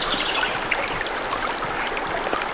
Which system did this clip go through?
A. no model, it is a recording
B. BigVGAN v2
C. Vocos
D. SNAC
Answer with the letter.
A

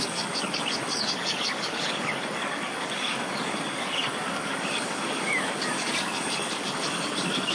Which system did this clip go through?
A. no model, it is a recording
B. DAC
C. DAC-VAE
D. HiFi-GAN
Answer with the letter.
B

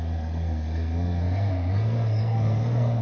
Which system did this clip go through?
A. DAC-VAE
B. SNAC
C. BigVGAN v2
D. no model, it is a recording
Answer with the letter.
B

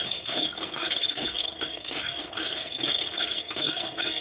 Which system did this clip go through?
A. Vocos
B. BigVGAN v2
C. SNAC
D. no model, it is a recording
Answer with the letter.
C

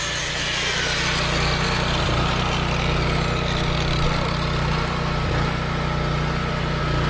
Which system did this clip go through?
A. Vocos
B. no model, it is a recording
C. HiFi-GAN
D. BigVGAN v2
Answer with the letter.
B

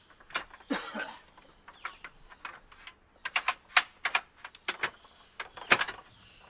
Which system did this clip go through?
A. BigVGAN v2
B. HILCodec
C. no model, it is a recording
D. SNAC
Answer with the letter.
C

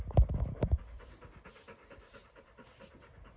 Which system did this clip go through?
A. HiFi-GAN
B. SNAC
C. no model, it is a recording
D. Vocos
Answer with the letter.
C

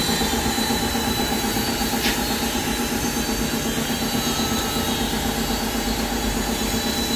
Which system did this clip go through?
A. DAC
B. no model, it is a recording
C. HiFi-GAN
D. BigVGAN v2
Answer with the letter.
D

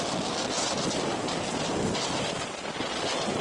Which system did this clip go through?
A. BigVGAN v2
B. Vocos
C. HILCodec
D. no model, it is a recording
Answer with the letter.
D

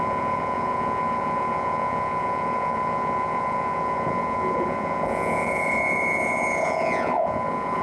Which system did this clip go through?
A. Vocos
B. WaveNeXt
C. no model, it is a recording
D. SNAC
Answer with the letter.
A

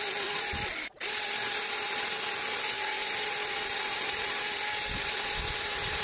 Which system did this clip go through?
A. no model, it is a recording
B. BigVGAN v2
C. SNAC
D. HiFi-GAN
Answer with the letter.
A